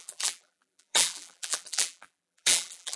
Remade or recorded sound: remade